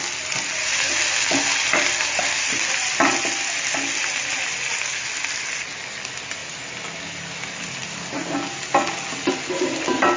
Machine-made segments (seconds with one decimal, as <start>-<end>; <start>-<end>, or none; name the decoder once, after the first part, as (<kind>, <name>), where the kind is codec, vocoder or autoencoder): none